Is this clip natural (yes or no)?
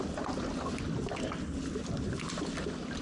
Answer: yes